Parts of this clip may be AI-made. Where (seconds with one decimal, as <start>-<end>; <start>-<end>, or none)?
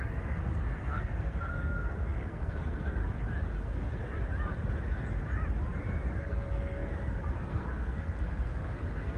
0.0-3.0; 3.6-4.0; 6.2-9.2